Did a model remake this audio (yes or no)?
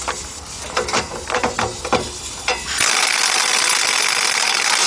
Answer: no